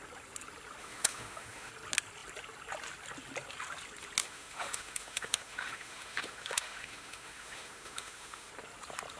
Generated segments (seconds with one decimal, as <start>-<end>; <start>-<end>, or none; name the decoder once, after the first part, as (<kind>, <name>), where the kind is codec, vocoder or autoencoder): 0.8-1.7 (autoencoder, DAC-VAE); 4.2-8.5